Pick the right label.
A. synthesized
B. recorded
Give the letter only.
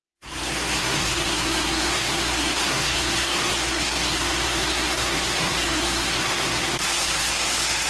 A